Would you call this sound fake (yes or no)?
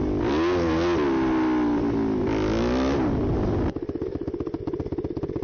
no